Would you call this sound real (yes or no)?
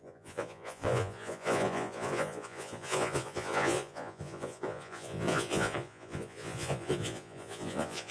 no